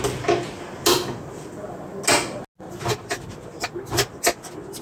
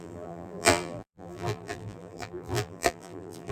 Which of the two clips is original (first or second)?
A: first